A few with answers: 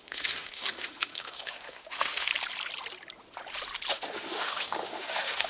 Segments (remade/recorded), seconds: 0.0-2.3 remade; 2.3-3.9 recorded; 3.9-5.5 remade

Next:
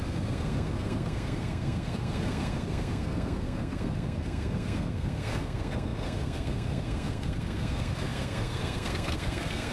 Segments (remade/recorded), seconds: 0.0-9.7 remade

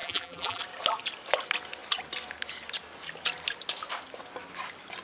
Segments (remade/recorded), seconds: 0.0-0.6 remade; 0.6-5.0 recorded

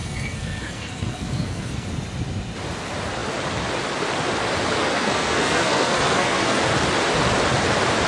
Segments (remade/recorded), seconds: 0.0-1.9 remade; 1.9-4.8 recorded; 4.8-6.6 remade; 6.6-8.1 recorded

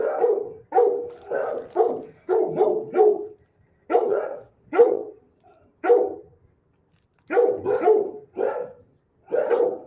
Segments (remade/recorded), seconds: 0.0-4.0 recorded; 4.0-5.2 remade; 5.2-9.9 recorded

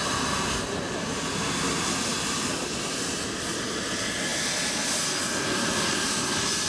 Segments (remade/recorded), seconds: 0.0-2.1 recorded; 2.1-3.8 remade; 3.8-4.3 recorded; 4.3-5.2 remade; 5.2-6.7 recorded